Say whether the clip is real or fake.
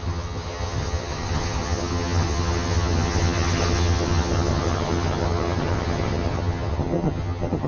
fake